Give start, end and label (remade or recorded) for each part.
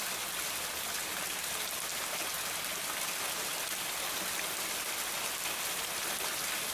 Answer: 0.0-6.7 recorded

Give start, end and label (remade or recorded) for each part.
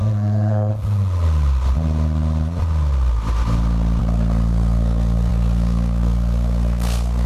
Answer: 0.0-0.7 remade; 0.7-4.0 recorded; 4.0-7.3 remade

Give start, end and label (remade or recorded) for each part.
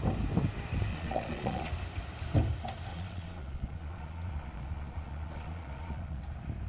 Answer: 0.0-0.9 recorded; 0.9-1.7 remade; 1.7-2.9 recorded; 2.9-6.2 remade; 6.2-6.7 recorded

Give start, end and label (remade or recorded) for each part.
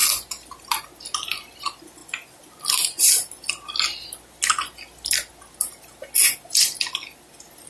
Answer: 0.0-7.7 recorded